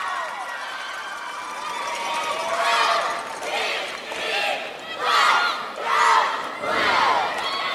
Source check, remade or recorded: recorded